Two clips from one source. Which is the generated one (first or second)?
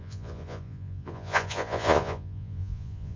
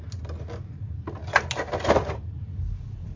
first